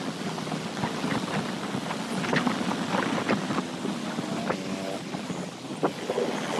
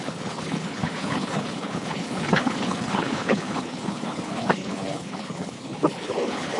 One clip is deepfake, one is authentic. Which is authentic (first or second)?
first